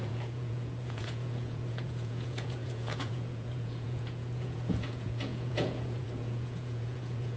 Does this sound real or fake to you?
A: fake